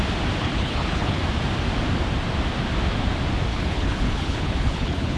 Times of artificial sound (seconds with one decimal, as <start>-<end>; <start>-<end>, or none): 0.4-1.2; 3.5-5.2